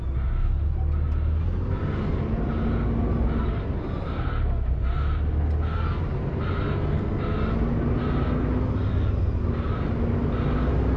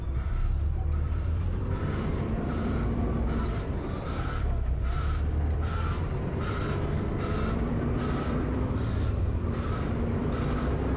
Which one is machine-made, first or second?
second